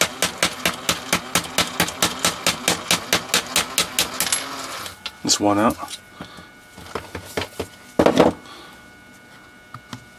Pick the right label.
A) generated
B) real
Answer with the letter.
B